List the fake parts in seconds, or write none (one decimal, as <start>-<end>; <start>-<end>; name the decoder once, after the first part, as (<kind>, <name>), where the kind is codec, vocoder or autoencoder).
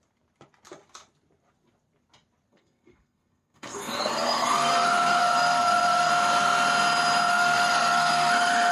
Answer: 2.5-6.1 (codec, SNAC); 7.3-8.7